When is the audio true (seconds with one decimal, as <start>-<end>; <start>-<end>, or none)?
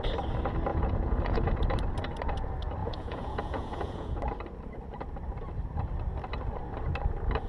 0.0-0.7; 1.5-2.8; 4.2-7.5